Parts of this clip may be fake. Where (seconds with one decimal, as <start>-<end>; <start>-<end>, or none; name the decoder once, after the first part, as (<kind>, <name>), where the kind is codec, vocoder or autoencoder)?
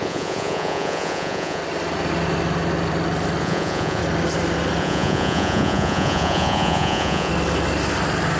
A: 0.0-1.6 (vocoder, Vocos); 3.4-4.0; 4.8-7.3